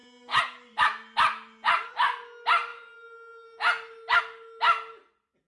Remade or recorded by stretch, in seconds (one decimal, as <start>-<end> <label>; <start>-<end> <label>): 0.0-5.5 recorded